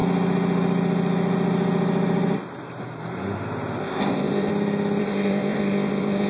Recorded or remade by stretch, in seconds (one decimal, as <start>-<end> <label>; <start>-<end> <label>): 0.0-3.8 recorded; 3.8-4.5 remade; 4.5-5.0 recorded; 5.0-6.3 remade